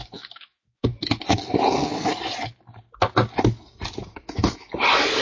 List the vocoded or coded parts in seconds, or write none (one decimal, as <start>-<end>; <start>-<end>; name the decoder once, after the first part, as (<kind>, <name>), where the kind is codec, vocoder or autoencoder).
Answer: 0.0-0.9 (autoencoder, DAC-VAE); 4.0-4.7